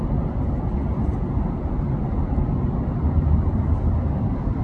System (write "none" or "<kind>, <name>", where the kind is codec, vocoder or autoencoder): none